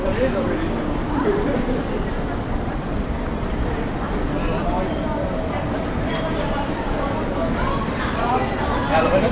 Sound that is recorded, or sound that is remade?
remade